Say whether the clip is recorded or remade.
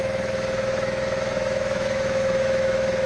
remade